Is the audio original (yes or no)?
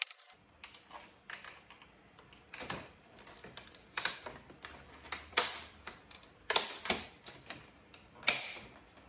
no